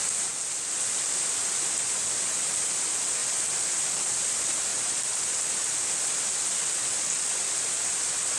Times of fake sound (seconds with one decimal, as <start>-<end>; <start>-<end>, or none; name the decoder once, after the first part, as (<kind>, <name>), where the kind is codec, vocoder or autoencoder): 3.2-3.7 (vocoder, BigVGAN v2)

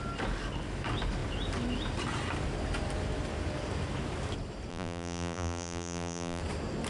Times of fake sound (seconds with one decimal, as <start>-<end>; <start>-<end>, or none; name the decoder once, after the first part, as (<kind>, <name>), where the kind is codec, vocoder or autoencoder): 4.7-6.4 (vocoder, BigVGAN v2)

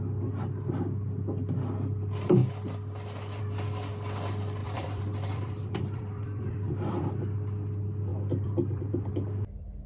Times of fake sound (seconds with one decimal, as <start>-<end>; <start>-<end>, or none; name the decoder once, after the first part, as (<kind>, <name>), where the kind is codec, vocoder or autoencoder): 4.6-7.1 (vocoder, BigVGAN v2); 8.1-9.1

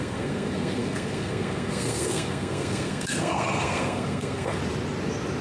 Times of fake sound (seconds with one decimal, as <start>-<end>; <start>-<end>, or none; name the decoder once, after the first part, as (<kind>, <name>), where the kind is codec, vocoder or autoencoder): 0.0-4.6 (codec, SNAC)